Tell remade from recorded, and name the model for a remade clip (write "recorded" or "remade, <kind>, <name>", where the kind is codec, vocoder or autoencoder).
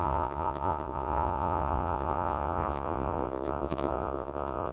remade, vocoder, Vocos